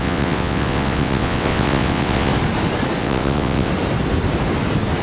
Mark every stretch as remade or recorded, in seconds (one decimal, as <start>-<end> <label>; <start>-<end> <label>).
0.0-2.3 remade; 2.3-3.0 recorded; 3.0-3.7 remade; 3.7-5.0 recorded